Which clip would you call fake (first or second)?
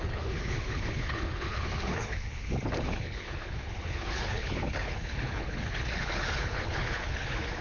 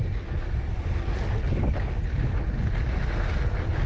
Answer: first